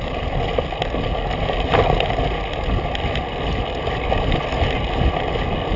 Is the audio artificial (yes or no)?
no